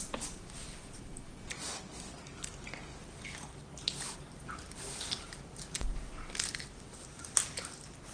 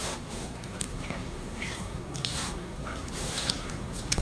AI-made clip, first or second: second